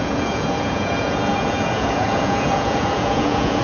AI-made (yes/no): yes